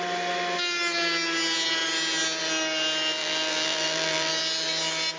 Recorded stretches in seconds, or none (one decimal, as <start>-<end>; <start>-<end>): 0.0-3.2; 4.3-5.2